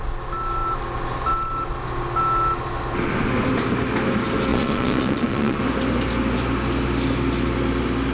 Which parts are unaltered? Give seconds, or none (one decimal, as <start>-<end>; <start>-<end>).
0.0-4.5; 5.6-8.1